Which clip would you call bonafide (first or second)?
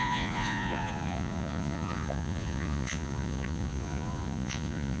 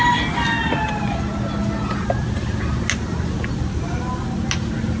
second